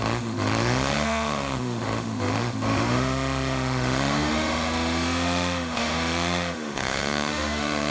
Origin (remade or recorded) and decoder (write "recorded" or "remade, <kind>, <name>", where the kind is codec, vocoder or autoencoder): remade, autoencoder, DAC-VAE